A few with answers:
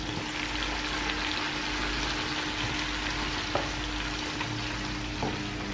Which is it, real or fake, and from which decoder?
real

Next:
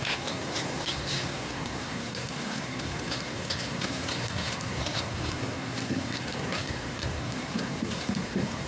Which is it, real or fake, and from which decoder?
fake, codec, SNAC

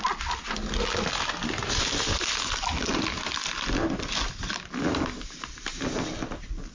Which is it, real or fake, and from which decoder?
real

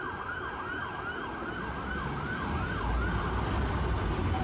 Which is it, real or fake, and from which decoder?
real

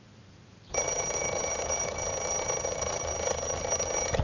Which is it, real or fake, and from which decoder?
fake, vocoder, BigVGAN v2